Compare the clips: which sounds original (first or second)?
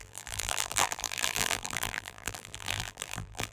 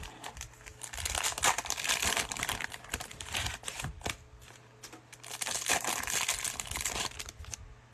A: second